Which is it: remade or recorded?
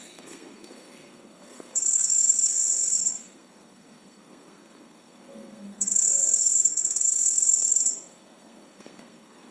remade